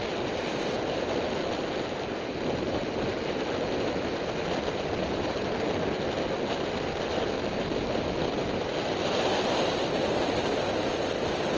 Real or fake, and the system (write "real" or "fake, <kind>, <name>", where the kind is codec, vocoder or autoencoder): real